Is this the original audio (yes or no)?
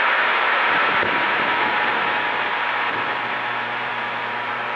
no